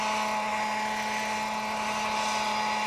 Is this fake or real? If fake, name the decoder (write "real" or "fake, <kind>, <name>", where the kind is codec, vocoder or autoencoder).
real